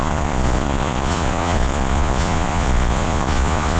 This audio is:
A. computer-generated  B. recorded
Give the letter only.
A